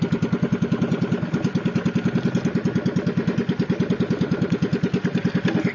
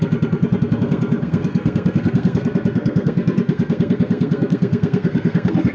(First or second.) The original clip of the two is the first